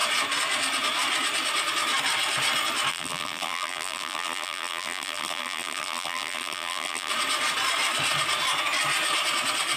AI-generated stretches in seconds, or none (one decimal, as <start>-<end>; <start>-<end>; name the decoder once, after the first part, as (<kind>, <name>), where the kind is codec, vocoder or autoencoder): 2.9-7.1 (vocoder, BigVGAN v2)